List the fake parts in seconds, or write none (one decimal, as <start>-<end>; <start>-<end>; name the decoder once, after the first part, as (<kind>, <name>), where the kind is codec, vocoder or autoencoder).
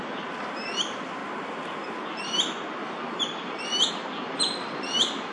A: none